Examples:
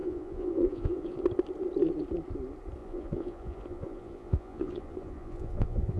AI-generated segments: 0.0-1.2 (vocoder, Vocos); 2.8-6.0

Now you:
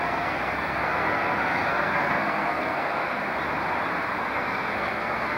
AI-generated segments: 0.0-3.2 (codec, SNAC); 4.2-5.4

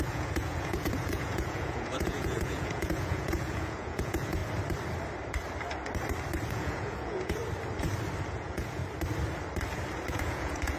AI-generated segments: 0.0-4.4 (vocoder, Vocos); 6.5-7.4; 8.3-8.8; 10.1-10.8

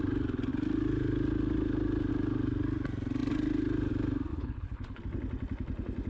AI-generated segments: 4.3-5.0 (codec, HILCodec)

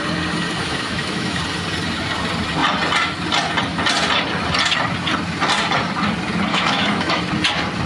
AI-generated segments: 0.6-1.4 (autoencoder, DAC-VAE); 6.5-7.2

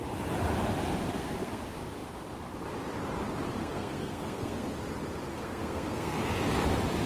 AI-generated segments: 1.1-1.6 (codec, SNAC); 3.6-4.7; 5.3-6.2